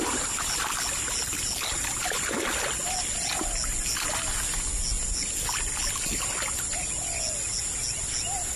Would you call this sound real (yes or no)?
yes